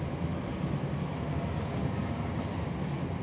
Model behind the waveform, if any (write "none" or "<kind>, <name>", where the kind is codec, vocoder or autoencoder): none